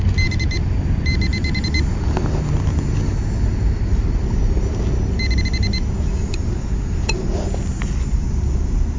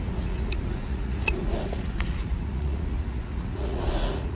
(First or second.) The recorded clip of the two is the first